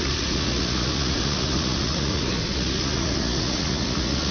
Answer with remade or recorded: remade